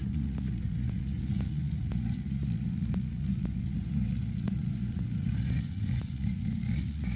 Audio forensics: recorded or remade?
remade